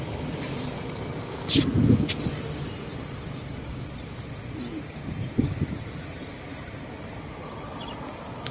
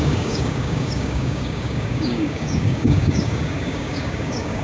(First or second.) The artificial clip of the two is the second